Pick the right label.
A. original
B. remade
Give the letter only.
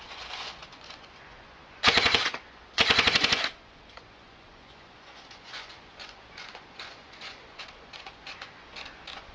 B